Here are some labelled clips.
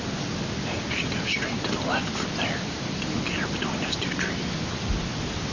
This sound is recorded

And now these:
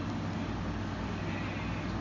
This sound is recorded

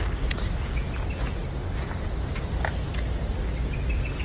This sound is recorded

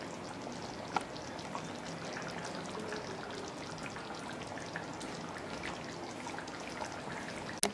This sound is recorded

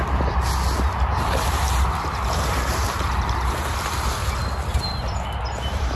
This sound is recorded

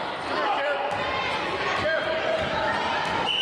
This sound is remade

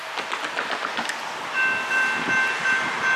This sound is recorded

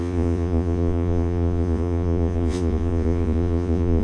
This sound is remade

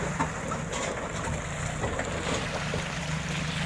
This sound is recorded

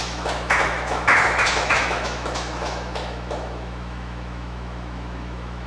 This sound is remade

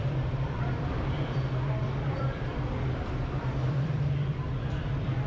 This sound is remade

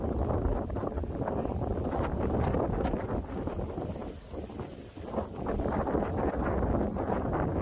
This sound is recorded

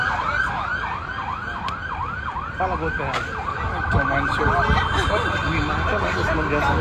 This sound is recorded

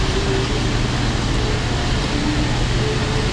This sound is recorded